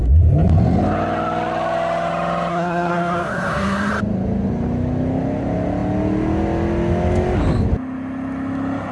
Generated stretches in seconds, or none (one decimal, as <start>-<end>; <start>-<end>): 2.5-3.9